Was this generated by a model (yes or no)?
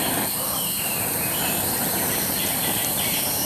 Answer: yes